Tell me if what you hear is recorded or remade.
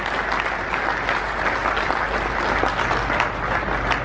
recorded